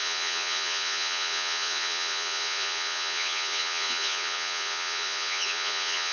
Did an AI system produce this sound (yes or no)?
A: yes